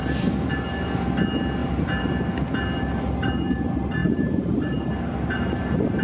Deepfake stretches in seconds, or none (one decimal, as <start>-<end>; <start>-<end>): 1.6-2.1

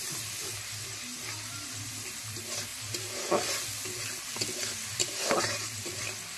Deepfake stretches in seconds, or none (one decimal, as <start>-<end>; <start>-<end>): none

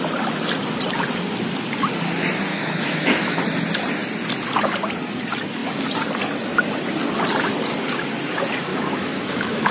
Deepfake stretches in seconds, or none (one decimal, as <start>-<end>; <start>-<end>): 2.5-3.4; 8.7-9.7

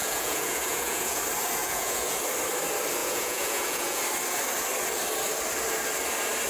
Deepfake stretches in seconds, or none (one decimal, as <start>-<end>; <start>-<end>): 0.0-1.2; 1.6-2.2; 3.0-4.0

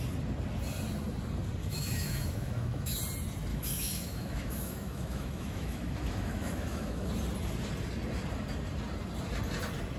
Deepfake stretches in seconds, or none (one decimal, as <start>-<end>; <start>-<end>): 1.6-3.0; 3.5-7.1

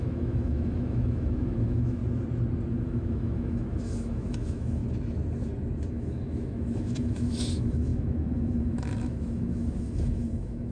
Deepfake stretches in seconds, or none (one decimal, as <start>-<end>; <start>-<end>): 0.0-2.0; 2.7-4.8; 5.9-10.7

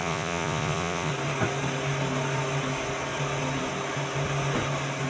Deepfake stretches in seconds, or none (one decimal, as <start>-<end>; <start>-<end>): 0.0-1.1

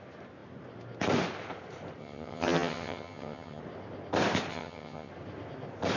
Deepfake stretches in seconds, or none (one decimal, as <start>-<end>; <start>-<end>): 2.0-3.6; 4.5-5.1